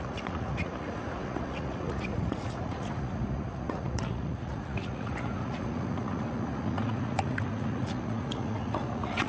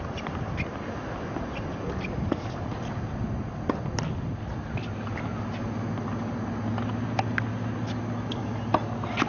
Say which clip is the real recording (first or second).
second